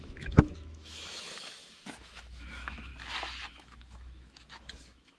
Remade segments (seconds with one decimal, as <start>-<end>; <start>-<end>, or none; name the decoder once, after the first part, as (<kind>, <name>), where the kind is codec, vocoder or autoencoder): 0.0-2.9 (autoencoder, DAC-VAE); 3.5-5.2